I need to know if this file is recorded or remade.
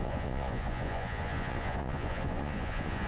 remade